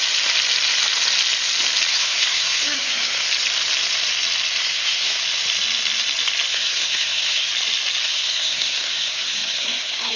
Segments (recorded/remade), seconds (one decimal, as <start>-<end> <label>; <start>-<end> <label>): 0.0-1.9 recorded; 1.9-3.3 remade; 3.3-4.6 recorded; 4.6-5.2 remade; 5.2-6.5 recorded; 6.5-7.5 remade; 7.5-8.0 recorded; 8.0-10.2 remade